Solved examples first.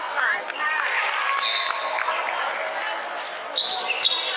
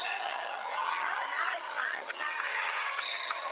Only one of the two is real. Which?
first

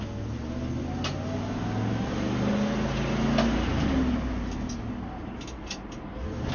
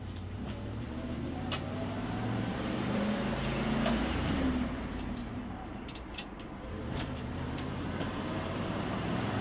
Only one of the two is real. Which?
first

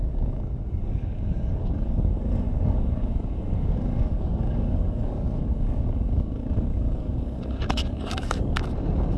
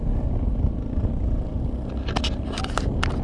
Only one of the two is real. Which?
second